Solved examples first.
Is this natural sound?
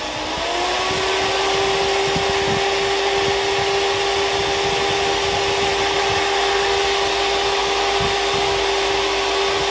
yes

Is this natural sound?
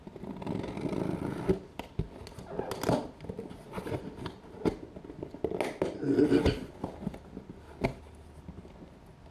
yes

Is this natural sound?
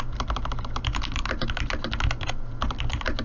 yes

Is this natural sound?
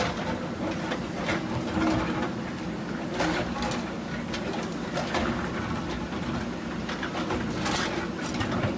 yes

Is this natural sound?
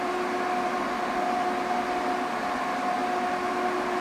yes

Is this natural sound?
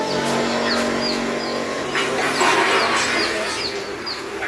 yes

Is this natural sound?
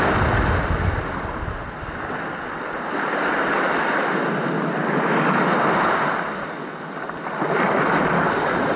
yes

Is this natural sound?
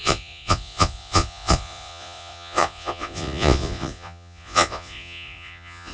no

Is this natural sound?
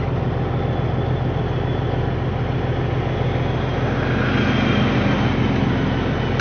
yes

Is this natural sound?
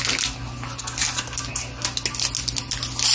yes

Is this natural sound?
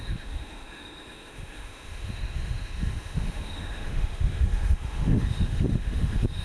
no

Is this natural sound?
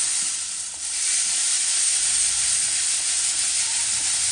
yes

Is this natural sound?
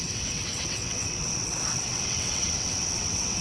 no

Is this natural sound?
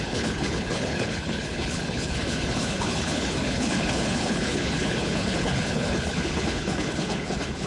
no